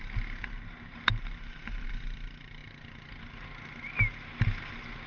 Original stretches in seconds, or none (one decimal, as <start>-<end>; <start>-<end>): 0.0-5.1